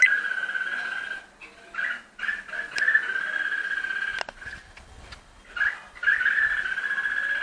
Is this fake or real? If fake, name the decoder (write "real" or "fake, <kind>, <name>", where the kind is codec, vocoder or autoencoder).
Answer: real